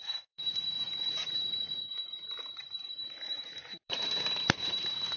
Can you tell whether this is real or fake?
fake